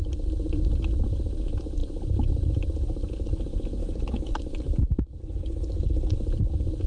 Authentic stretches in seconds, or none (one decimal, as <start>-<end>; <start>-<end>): 0.0-3.8; 4.4-5.2; 6.1-6.9